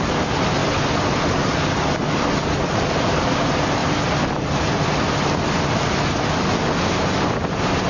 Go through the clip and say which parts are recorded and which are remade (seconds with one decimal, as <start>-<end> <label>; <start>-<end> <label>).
0.0-0.6 recorded; 0.6-2.0 remade; 2.0-7.9 recorded